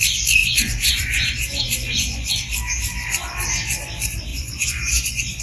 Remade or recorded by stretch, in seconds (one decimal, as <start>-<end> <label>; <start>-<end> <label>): 0.0-0.4 recorded; 0.4-2.3 remade; 2.3-4.3 recorded; 4.3-5.4 remade